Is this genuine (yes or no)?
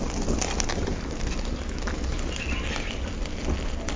yes